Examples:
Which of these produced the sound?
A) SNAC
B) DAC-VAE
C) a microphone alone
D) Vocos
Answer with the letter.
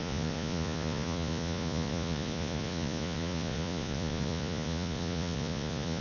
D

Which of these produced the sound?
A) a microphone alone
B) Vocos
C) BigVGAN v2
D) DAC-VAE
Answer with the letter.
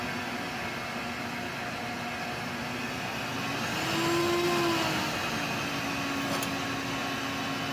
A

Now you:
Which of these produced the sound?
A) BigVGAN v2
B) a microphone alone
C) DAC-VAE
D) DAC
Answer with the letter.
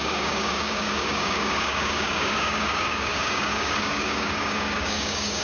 D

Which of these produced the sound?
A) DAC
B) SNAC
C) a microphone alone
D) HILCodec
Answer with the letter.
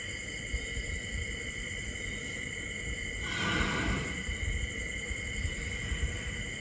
C